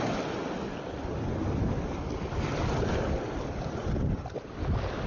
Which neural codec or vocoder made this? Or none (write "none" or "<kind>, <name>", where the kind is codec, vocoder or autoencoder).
none